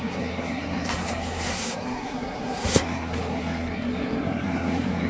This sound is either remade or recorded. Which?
remade